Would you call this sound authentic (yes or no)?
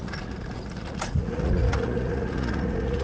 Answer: no